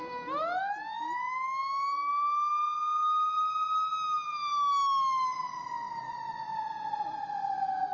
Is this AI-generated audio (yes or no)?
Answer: no